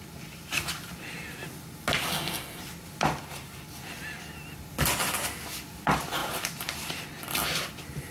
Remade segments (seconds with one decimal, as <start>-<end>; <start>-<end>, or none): 2.1-2.6